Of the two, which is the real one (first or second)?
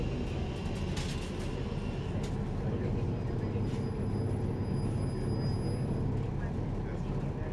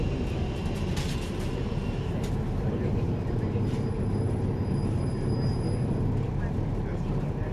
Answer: first